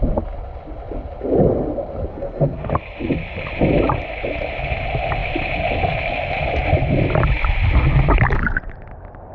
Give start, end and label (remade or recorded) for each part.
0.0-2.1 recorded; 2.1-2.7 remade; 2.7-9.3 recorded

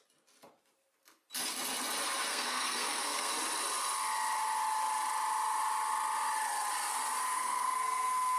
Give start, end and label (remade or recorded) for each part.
0.0-2.3 recorded; 2.3-3.3 remade; 3.3-7.3 recorded; 7.3-8.4 remade

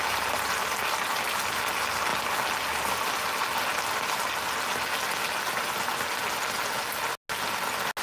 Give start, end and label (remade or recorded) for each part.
0.0-8.0 recorded

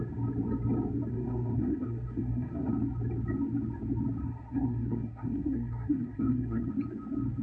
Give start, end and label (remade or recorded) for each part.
0.0-1.1 recorded; 1.1-2.7 remade; 2.7-4.2 recorded; 4.2-6.7 remade; 6.7-7.4 recorded

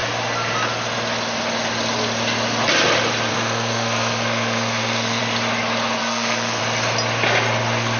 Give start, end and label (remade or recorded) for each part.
0.0-3.3 recorded; 3.3-5.2 remade; 5.2-6.0 recorded; 6.0-6.6 remade; 6.6-8.0 recorded

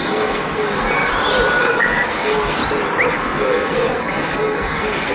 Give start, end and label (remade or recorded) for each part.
0.0-1.1 remade; 1.1-1.6 recorded; 1.6-2.6 remade; 2.6-3.1 recorded; 3.1-5.1 remade

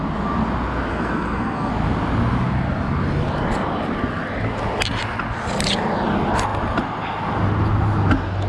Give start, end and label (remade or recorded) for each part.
0.0-0.9 recorded; 0.9-1.7 remade; 1.7-8.5 recorded